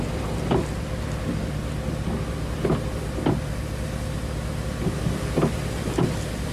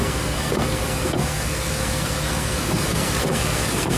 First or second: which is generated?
second